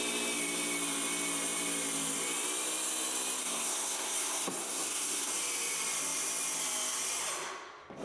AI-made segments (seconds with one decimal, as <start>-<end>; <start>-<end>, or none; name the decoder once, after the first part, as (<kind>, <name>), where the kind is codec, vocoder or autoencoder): 3.4-5.3 (codec, SNAC)